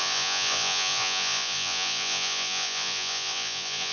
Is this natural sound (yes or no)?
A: no